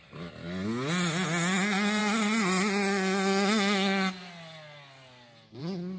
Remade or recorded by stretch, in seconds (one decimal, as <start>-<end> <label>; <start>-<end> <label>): 0.0-6.0 recorded